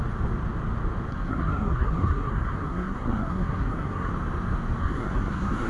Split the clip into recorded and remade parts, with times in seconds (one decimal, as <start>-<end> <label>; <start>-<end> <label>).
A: 0.0-1.1 recorded; 1.1-4.1 remade; 4.1-4.8 recorded; 4.8-5.7 remade